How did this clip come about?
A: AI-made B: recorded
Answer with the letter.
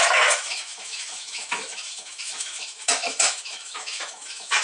A